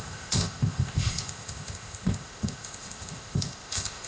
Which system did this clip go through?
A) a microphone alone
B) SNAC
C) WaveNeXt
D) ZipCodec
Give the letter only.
D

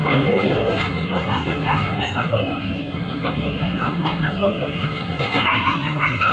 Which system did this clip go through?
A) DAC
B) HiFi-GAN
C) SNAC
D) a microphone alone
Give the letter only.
C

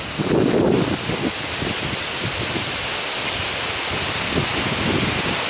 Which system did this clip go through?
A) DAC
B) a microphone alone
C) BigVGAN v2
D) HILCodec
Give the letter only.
B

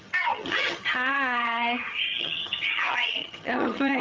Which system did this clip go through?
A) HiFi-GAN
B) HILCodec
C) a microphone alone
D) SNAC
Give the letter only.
A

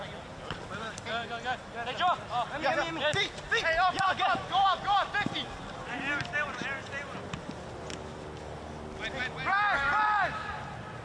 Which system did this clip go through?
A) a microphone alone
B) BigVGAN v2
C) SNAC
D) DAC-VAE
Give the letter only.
A